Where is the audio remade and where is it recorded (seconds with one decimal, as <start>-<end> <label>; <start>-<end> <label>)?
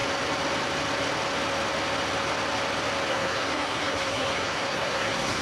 0.0-3.1 recorded; 3.1-5.4 remade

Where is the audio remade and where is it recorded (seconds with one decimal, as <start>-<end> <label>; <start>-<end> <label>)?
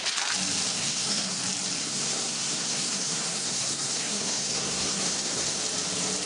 0.0-0.7 recorded; 0.7-1.4 remade; 1.4-1.8 recorded; 1.8-5.6 remade; 5.6-6.3 recorded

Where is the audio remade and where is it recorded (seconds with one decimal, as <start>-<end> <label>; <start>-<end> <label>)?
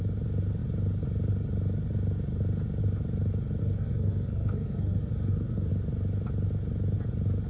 0.0-3.6 recorded; 3.6-5.7 remade; 5.7-7.5 recorded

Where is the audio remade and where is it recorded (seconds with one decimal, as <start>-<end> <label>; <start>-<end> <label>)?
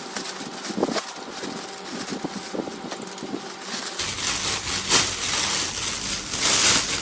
0.0-7.0 recorded